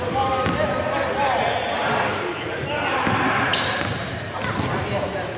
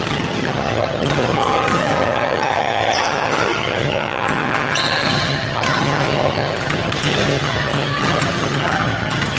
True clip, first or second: first